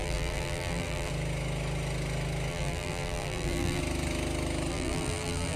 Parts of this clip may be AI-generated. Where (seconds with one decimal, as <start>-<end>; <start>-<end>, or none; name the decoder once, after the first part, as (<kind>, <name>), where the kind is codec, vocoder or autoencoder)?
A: 0.0-1.1 (vocoder, BigVGAN v2); 2.5-3.8; 4.7-5.6